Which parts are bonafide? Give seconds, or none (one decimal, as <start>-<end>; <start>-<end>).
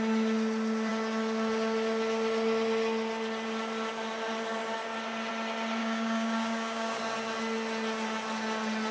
0.0-5.8; 7.0-8.9